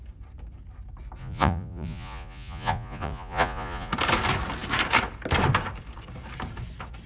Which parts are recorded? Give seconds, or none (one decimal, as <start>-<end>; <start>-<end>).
0.0-1.2; 3.9-7.1